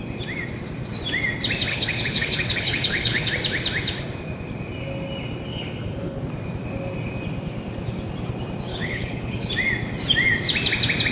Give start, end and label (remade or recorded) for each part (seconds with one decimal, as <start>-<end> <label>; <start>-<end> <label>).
0.0-1.7 recorded; 1.7-3.3 remade; 3.3-5.5 recorded; 5.5-6.2 remade; 6.2-8.7 recorded; 8.7-9.5 remade; 9.5-11.1 recorded